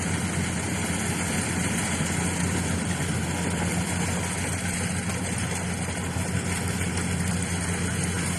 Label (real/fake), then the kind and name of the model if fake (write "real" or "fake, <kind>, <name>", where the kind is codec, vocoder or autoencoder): real